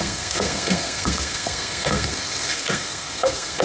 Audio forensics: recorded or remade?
remade